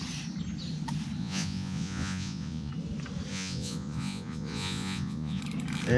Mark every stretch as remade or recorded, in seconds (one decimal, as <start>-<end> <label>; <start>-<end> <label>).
0.0-1.2 recorded; 1.2-2.7 remade; 2.7-3.3 recorded; 3.3-5.4 remade; 5.4-6.0 recorded